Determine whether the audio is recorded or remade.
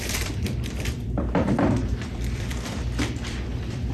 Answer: remade